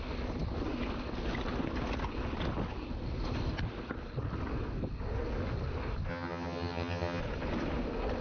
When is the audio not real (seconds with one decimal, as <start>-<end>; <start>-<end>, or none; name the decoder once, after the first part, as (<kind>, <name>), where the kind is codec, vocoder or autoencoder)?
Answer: 6.1-7.2 (vocoder, HiFi-GAN)